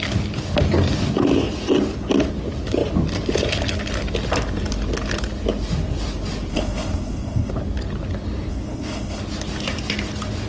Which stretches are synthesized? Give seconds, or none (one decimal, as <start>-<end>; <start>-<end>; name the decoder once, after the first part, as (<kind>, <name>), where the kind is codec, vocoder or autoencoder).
6.5-7.5 (codec, HILCodec); 8.5-9.2